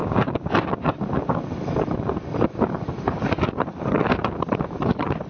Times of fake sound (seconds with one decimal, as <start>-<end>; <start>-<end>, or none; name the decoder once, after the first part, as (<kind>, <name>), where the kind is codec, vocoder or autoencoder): 0.0-0.5 (codec, DAC)